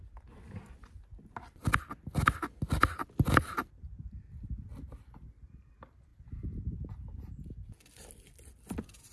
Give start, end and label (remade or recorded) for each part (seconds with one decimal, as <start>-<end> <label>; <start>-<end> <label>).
0.0-9.1 recorded